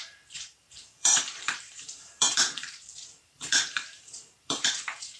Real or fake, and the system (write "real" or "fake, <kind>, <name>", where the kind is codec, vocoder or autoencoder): fake, vocoder, BigVGAN v2